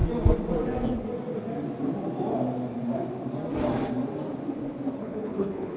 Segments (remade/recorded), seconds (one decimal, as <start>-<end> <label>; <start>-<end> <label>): 0.0-5.0 recorded; 5.0-5.8 remade